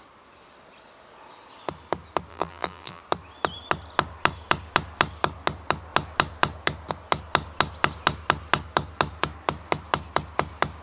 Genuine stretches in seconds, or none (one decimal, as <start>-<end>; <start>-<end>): 0.0-2.3; 3.0-10.8